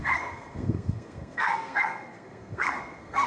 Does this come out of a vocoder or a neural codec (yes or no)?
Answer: yes